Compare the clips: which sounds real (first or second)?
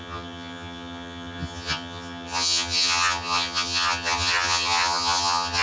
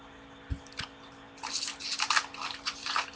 second